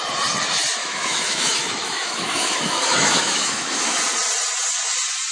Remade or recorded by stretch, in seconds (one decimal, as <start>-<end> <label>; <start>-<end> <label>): 0.0-0.8 recorded; 0.8-4.0 remade; 4.0-5.3 recorded